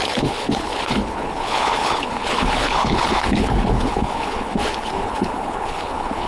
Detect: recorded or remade remade